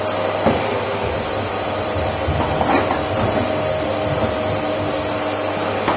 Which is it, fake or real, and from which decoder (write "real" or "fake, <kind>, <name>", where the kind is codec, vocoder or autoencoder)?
real